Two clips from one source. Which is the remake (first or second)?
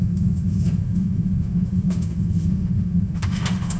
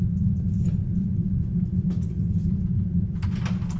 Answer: first